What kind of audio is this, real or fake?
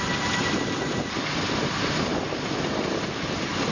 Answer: real